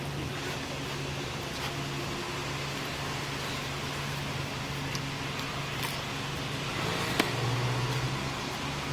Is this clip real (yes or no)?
yes